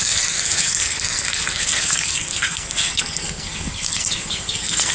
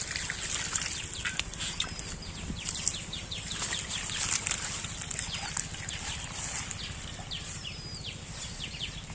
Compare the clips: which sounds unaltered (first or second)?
second